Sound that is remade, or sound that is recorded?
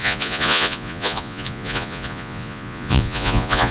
remade